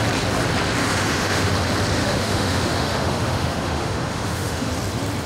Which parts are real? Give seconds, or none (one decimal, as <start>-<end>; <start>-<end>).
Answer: 0.0-0.8; 1.5-2.0; 4.7-5.3